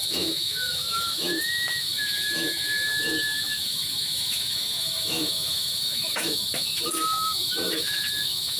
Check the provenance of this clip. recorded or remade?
remade